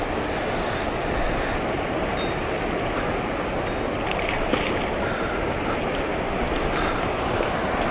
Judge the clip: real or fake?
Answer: real